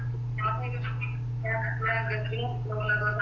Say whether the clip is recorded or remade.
recorded